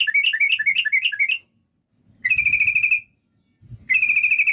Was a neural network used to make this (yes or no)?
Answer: no